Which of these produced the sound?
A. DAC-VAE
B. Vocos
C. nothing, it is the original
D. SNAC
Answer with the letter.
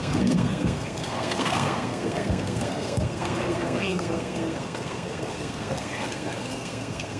D